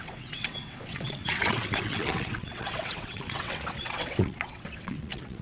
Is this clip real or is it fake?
fake